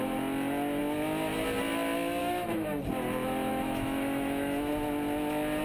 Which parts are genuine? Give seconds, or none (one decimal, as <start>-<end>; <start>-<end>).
0.0-2.2; 2.8-3.5; 4.7-5.6